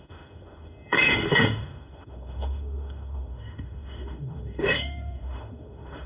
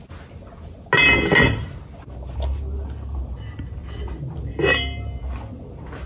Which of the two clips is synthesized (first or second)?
first